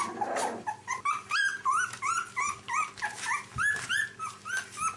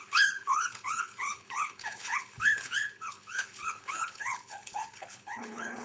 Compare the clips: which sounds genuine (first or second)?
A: first